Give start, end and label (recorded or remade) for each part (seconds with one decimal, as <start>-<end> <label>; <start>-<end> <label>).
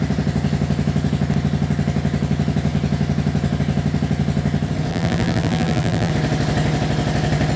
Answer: 0.0-4.9 recorded; 4.9-6.1 remade; 6.1-7.6 recorded